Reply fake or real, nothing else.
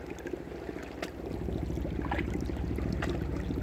real